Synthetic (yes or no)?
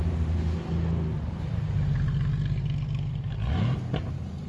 no